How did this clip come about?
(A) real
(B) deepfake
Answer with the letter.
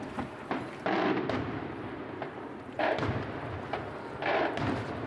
A